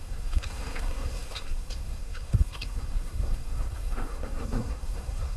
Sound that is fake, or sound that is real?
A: fake